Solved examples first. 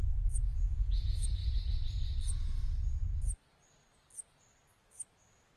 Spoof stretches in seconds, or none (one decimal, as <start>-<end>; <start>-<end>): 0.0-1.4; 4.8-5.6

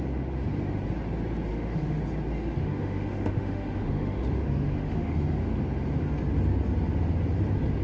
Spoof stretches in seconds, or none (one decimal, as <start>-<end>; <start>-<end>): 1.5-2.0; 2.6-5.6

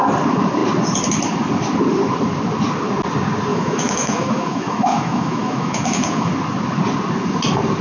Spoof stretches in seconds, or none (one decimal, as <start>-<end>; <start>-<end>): 3.5-6.3

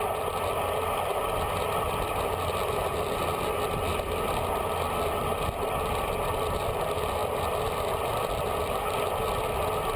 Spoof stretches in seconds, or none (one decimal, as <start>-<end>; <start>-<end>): none

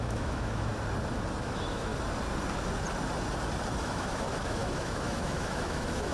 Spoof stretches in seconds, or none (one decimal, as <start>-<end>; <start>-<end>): 0.0-0.7; 1.4-1.9; 3.8-6.1